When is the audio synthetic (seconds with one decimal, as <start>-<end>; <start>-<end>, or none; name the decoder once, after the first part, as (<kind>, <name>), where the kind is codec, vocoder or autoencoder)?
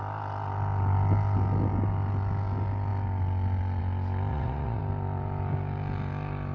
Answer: 4.3-4.8 (vocoder, Vocos)